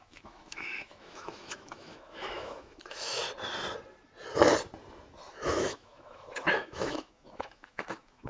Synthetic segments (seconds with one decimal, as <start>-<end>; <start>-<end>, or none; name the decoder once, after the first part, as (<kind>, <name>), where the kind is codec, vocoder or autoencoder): 0.0-3.2 (autoencoder, DAC-VAE); 5.3-8.3